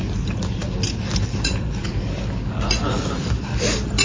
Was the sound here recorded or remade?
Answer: recorded